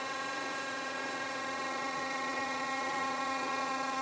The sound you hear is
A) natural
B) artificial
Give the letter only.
B